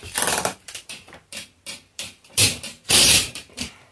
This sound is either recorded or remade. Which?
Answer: remade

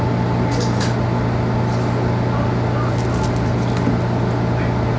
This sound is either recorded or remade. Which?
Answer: recorded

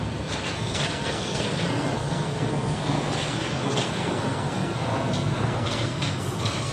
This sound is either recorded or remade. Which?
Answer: remade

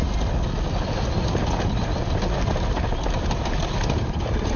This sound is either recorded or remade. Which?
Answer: recorded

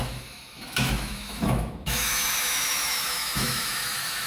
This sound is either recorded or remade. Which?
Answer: remade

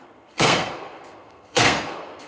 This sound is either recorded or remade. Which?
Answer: remade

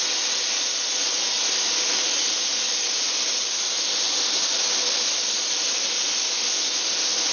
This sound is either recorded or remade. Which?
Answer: recorded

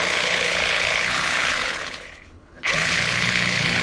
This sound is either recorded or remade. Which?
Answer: remade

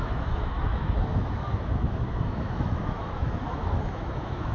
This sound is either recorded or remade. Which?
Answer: remade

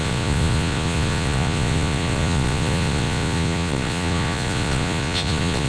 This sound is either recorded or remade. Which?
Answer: remade